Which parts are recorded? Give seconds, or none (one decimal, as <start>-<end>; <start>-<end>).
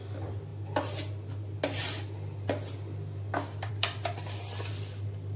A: 0.5-3.7